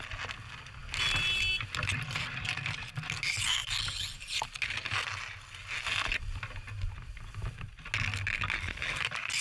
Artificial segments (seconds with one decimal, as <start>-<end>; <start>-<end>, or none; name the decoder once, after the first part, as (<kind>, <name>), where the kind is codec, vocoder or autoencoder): none